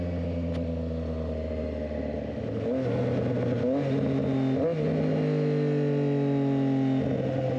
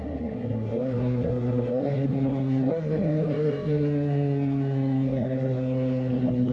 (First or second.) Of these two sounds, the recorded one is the first